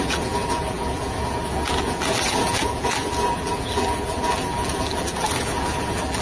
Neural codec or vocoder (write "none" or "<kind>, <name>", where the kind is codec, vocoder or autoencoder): vocoder, BigVGAN v2